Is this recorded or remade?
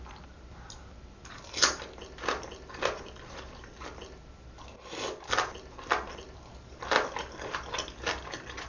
recorded